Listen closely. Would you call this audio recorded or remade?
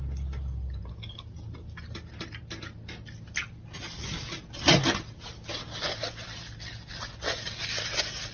recorded